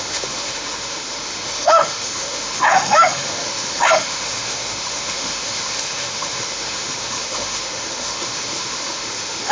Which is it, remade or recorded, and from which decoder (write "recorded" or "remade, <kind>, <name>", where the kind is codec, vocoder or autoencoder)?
remade, autoencoder, DAC-VAE